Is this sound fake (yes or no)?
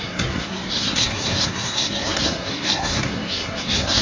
yes